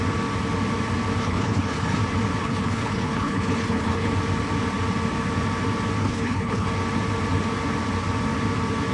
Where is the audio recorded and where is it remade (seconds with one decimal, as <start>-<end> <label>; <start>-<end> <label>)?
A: 0.0-1.2 recorded; 1.2-2.0 remade; 2.0-2.4 recorded; 2.4-4.1 remade; 4.1-6.0 recorded; 6.0-6.7 remade; 6.7-8.9 recorded